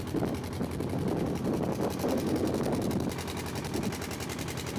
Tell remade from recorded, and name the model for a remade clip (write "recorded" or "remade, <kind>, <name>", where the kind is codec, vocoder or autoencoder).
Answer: recorded